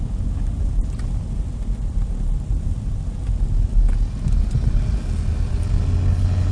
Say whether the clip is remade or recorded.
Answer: recorded